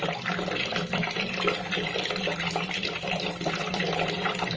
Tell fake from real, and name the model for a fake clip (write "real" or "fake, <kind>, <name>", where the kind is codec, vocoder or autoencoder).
fake, vocoder, BigVGAN v2